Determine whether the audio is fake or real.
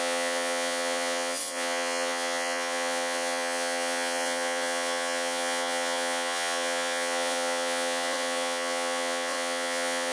fake